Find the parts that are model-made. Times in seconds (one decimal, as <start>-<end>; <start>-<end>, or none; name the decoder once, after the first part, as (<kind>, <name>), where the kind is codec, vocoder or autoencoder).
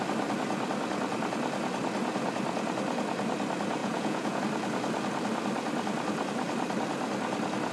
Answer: 3.8-4.4 (vocoder, Vocos)